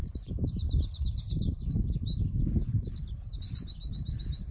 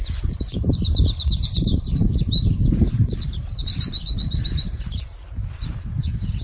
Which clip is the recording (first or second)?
first